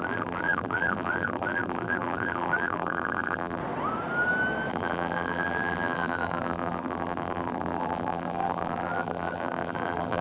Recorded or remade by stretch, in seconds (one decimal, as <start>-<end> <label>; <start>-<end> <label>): 0.0-3.6 remade; 3.6-4.7 recorded; 4.7-10.2 remade